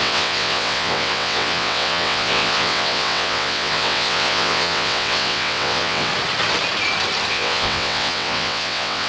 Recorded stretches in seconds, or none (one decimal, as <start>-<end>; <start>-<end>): 6.1-7.3